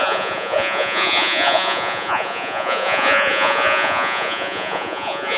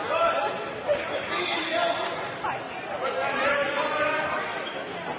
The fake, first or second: first